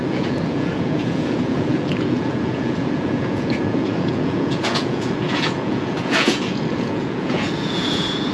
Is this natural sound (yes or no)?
no